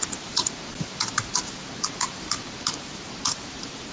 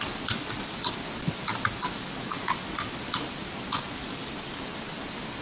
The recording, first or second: second